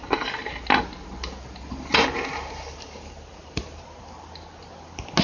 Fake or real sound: real